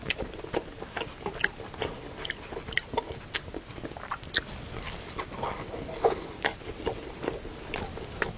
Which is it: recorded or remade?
recorded